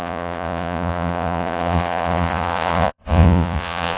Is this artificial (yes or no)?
yes